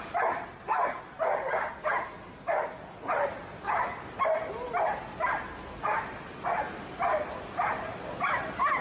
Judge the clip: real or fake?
real